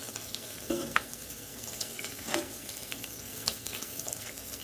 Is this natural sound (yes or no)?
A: no